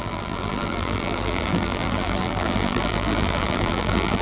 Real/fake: fake